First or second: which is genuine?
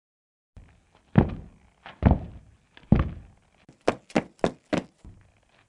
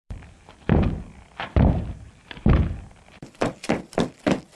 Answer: first